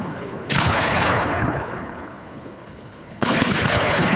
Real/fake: fake